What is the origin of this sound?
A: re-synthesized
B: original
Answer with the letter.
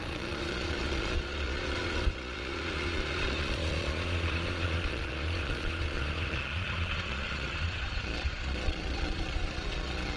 A